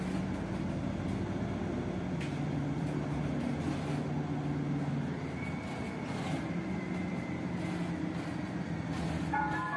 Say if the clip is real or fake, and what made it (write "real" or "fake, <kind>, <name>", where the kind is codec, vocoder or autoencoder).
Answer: real